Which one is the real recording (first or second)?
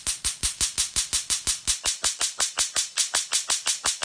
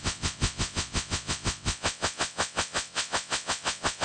first